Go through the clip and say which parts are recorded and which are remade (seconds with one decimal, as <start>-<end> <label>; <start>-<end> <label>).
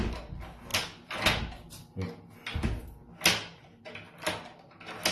0.0-5.1 recorded